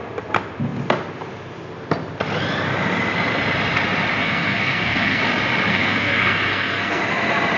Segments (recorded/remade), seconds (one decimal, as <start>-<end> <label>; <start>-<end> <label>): 0.0-4.2 recorded; 4.2-5.2 remade; 5.2-5.7 recorded; 5.7-7.0 remade; 7.0-7.6 recorded